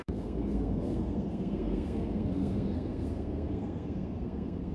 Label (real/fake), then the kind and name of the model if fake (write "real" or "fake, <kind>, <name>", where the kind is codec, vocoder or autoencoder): fake, codec, SNAC